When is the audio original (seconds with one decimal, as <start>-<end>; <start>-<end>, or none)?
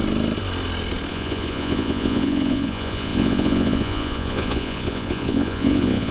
0.0-1.1